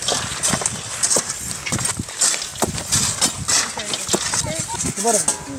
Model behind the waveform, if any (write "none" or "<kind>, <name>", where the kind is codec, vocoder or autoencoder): none